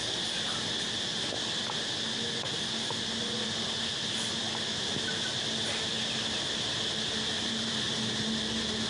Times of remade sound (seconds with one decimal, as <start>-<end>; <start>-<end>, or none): none